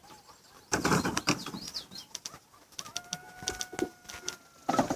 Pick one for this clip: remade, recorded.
recorded